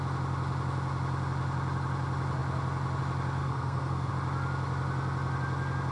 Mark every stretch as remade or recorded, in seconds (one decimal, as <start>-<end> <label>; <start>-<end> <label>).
0.0-3.4 recorded; 3.4-4.1 remade; 4.1-5.9 recorded